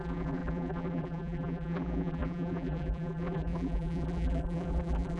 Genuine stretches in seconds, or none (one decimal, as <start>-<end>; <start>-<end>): none

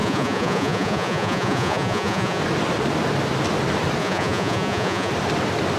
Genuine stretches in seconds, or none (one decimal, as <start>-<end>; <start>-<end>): 2.4-4.0; 5.1-5.8

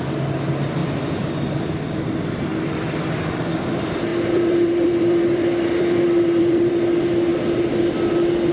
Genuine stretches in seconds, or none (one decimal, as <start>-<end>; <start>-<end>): 0.0-0.8; 1.7-4.1; 6.7-8.5

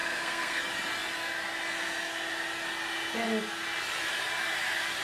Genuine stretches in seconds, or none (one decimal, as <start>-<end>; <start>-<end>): 0.6-5.0

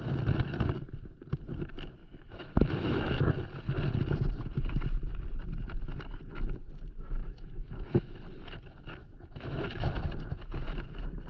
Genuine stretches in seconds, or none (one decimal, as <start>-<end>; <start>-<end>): 0.0-2.0; 3.3-7.2; 8.2-9.0; 10.0-11.3

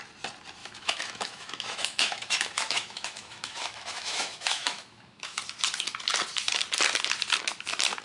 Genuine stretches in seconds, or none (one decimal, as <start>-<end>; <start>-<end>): 0.0-0.6; 5.4-8.0

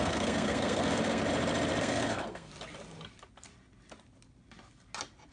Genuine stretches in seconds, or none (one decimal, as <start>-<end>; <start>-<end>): 1.2-1.8; 2.5-5.3

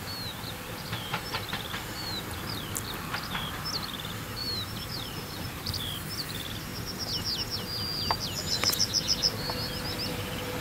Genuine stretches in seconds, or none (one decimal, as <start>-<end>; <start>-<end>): 0.0-4.4; 5.8-10.6